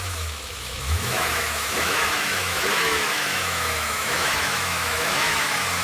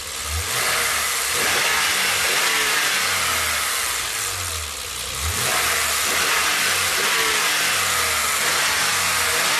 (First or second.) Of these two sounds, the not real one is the first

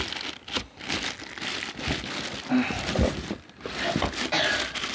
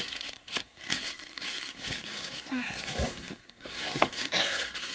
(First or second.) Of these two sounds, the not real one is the second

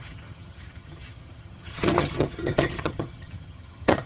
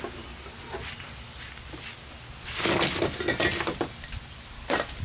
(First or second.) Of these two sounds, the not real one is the first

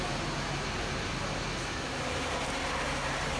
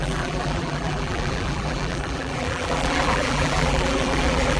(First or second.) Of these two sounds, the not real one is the second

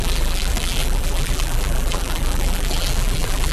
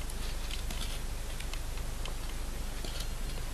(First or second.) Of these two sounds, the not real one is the first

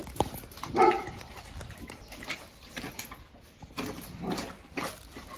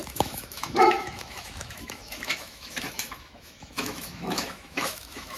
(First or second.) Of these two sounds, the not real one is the second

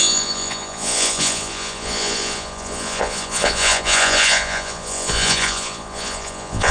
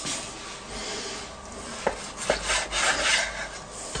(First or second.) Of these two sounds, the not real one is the first